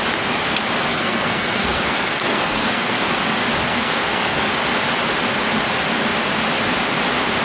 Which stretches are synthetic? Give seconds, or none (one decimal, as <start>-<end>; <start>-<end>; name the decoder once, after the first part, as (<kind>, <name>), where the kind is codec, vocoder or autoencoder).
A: 0.9-3.2 (codec, SNAC); 3.7-4.5